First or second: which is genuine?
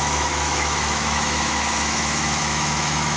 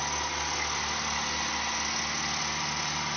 second